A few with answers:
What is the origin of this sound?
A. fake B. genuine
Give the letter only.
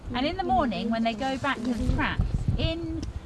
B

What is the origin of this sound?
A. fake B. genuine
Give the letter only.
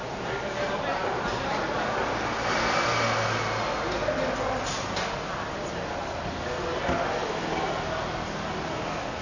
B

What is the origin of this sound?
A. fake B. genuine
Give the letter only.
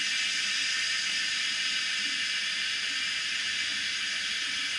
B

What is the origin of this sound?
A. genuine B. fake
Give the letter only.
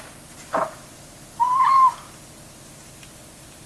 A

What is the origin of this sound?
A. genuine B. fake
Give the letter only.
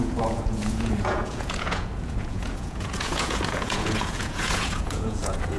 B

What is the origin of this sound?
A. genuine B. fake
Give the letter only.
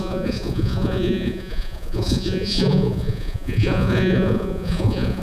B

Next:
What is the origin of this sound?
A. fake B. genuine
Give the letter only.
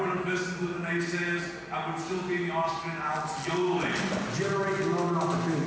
B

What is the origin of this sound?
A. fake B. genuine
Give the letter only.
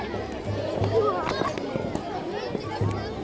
B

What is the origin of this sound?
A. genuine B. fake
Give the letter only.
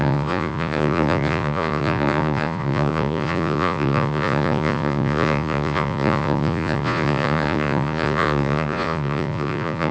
B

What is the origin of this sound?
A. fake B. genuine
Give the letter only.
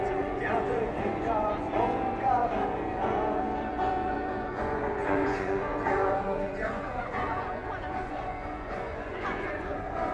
A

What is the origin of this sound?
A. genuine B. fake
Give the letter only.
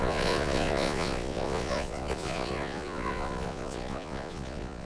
B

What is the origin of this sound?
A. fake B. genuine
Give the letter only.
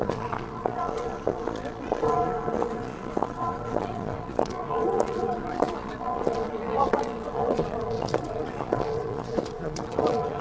A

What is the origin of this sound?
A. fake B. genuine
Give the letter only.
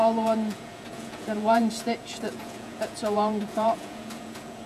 A